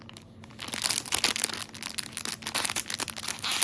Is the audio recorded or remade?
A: recorded